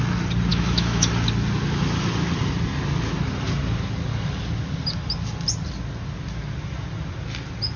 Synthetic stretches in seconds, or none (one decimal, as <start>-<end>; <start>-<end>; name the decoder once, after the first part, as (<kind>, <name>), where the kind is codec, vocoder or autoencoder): 0.5-1.1 (autoencoder, DAC-VAE)